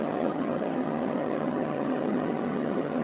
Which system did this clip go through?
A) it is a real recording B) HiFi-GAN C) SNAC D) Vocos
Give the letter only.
B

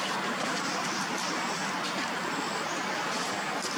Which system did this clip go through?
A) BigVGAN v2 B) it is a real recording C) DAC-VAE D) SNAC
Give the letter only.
B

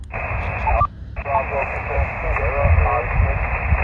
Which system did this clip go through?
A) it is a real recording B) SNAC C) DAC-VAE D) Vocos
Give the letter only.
A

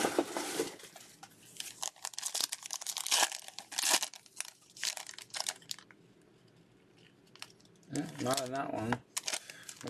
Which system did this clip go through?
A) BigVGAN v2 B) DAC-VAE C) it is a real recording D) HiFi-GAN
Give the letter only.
C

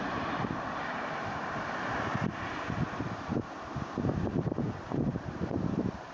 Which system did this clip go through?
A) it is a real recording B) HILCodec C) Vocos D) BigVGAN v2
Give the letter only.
D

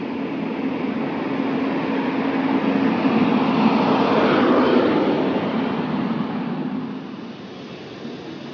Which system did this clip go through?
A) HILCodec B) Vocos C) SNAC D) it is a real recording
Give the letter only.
D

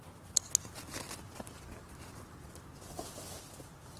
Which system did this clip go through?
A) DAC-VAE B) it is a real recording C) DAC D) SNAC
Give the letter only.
B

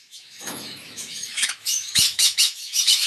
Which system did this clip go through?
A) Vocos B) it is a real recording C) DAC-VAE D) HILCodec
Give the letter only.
C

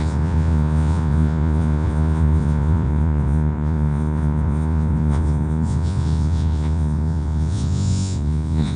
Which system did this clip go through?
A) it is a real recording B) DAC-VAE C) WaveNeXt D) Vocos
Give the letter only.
D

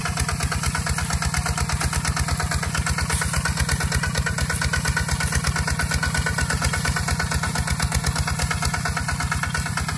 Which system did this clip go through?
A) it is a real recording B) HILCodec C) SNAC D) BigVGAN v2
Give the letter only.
A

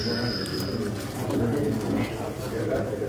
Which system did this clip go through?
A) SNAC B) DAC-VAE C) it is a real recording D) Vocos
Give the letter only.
C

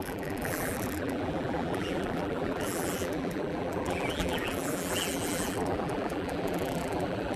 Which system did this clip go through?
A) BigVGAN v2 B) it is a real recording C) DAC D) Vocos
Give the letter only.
A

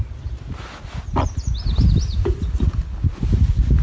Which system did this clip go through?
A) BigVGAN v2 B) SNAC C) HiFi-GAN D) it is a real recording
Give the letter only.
D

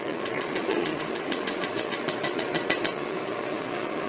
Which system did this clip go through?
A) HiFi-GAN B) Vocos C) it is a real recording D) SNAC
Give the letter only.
B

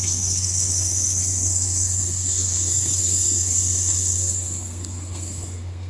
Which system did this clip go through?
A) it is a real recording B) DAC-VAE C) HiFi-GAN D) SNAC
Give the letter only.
D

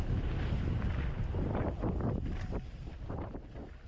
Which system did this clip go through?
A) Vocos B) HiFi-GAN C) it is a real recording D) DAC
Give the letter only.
C